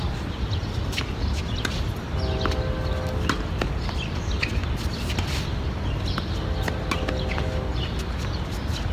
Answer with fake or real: real